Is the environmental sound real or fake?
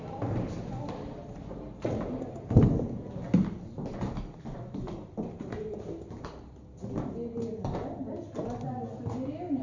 real